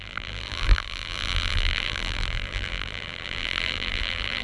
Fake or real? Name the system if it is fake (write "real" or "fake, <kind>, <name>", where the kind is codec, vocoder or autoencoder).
fake, vocoder, BigVGAN v2